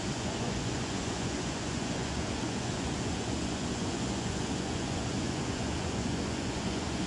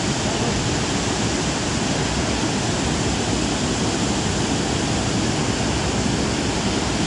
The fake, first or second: first